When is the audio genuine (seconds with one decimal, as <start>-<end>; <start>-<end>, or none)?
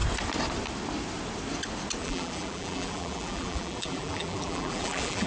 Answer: 0.0-2.0